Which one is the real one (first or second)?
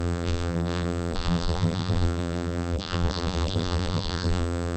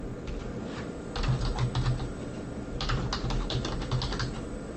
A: second